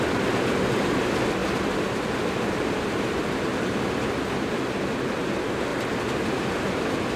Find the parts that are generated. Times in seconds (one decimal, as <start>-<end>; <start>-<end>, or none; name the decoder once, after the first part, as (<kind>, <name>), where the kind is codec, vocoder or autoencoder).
1.4-3.8 (vocoder, BigVGAN v2); 5.7-6.3